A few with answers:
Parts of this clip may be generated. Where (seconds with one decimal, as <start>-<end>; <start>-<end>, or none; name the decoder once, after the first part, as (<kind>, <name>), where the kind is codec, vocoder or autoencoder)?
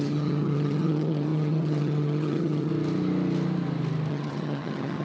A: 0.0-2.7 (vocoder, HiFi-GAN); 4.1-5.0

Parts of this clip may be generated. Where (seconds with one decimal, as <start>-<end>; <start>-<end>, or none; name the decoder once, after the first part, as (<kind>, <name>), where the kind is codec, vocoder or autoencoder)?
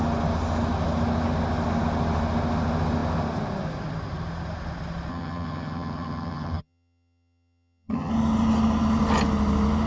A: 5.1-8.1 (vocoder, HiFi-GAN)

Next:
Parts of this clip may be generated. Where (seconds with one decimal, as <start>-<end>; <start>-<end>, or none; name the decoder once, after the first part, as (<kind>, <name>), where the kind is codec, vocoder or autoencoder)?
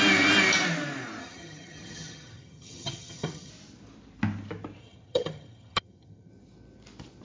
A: 1.2-3.5 (vocoder, HiFi-GAN); 4.8-6.3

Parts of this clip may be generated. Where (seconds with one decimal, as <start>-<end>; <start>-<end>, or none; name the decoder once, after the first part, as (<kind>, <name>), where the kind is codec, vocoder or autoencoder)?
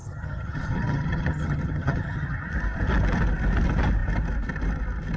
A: 0.0-2.4 (vocoder, HiFi-GAN)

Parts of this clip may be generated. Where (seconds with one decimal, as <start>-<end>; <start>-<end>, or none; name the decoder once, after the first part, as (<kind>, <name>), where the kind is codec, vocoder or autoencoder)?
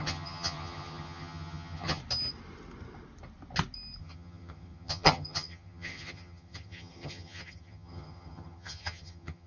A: 0.0-2.0 (vocoder, HiFi-GAN); 4.0-9.5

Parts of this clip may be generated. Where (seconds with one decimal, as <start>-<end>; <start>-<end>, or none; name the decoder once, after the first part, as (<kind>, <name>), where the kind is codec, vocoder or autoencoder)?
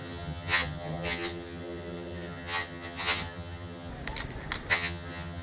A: 0.0-3.9 (vocoder, HiFi-GAN); 4.7-5.4